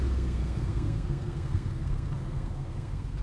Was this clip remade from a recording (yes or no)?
yes